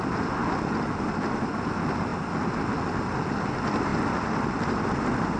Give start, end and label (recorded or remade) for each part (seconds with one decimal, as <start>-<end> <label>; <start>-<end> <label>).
0.0-5.4 recorded